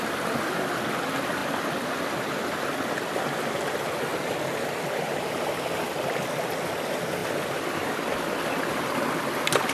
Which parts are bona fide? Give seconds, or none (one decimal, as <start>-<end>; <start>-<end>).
0.0-7.2; 8.3-9.7